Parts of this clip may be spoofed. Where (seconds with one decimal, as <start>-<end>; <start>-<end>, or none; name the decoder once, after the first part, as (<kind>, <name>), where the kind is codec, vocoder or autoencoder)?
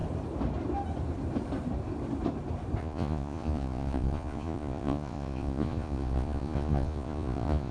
2.8-7.7 (vocoder, Vocos)